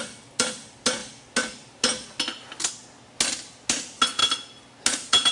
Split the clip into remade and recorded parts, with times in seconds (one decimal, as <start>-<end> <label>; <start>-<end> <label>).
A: 0.0-5.3 recorded